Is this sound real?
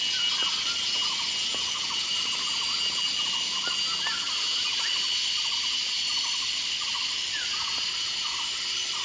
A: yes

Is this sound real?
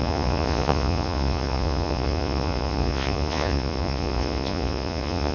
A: no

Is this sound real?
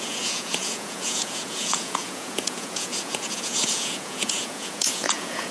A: no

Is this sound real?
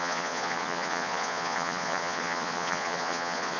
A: no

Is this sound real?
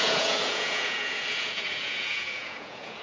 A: no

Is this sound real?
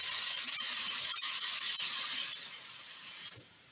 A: no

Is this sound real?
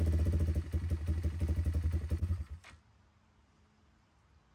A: yes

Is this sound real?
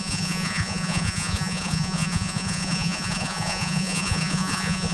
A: no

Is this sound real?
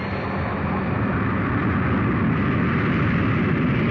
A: yes